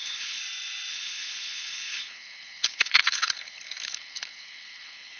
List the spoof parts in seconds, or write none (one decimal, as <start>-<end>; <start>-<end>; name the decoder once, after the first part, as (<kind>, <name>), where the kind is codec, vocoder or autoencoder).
0.0-0.4 (codec, HILCodec); 0.9-5.2